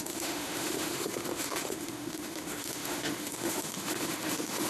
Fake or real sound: fake